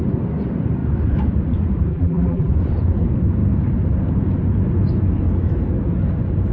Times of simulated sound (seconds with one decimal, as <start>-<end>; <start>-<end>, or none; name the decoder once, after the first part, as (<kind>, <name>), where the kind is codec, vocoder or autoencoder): 1.9-2.5 (vocoder, BigVGAN v2)